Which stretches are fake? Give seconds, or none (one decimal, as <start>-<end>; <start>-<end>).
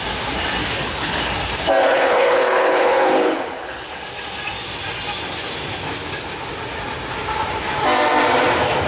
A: 0.6-1.2; 1.8-4.0